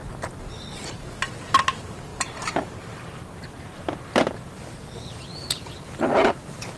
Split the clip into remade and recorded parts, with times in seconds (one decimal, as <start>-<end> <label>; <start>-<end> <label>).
0.0-1.2 remade; 1.2-2.1 recorded; 2.1-3.7 remade; 3.7-5.3 recorded; 5.3-6.8 remade